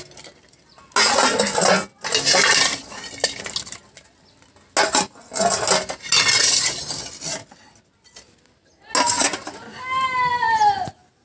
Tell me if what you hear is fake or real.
real